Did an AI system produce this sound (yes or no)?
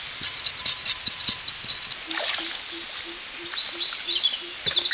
no